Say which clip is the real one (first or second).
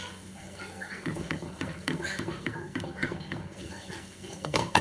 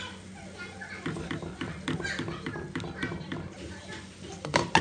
second